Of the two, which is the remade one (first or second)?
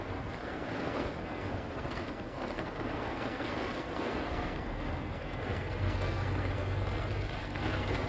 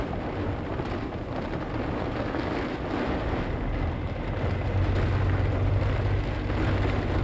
first